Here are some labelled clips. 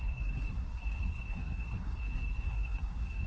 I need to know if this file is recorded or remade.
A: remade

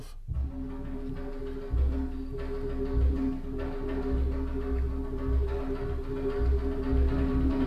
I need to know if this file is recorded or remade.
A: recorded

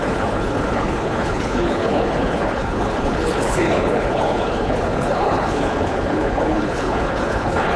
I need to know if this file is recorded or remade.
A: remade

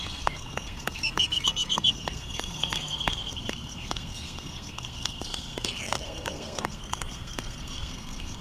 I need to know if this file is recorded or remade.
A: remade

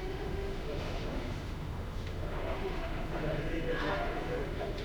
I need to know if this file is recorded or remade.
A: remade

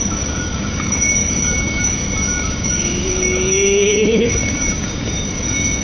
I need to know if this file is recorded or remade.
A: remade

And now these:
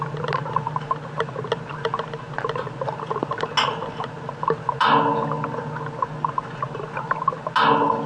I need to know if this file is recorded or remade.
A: recorded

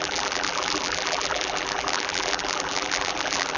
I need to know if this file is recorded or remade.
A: remade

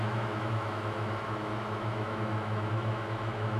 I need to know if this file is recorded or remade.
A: remade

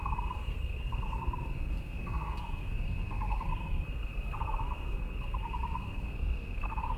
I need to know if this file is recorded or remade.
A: remade